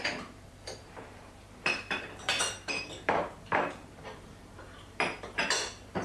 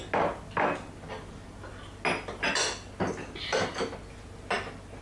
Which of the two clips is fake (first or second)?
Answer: first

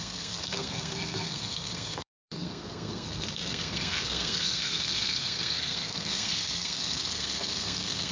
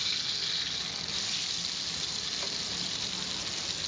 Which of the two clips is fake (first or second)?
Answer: first